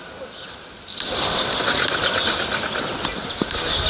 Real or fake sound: real